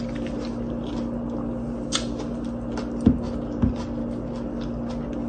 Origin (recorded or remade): recorded